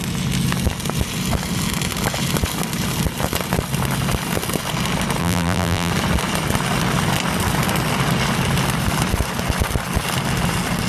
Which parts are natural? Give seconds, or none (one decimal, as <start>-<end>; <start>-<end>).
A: 0.0-5.2; 5.9-10.9